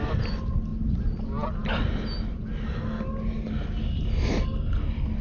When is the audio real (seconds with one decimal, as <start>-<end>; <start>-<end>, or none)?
0.0-5.2